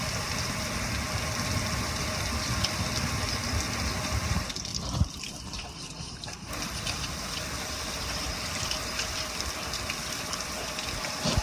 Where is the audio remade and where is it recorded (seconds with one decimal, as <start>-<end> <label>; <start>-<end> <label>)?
0.0-11.4 recorded